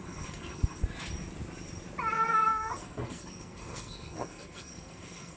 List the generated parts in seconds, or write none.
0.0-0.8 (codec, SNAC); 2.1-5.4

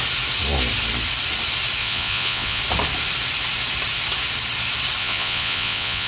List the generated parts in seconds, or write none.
1.8-2.6 (vocoder, Vocos); 5.0-6.1

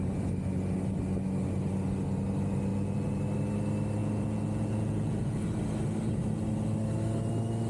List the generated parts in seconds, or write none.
2.7-3.2 (vocoder, Vocos); 4.0-5.4

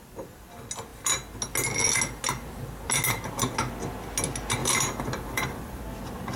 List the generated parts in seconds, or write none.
4.6-5.8 (vocoder, BigVGAN v2)